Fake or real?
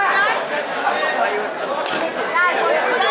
real